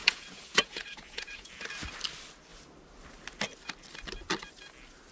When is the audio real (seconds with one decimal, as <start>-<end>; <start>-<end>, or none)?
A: 1.5-5.1